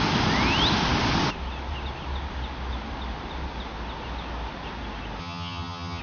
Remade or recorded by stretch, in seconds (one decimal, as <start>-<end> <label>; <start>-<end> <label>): 0.0-5.2 recorded; 5.2-6.0 remade